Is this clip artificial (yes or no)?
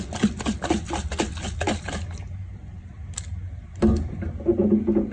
no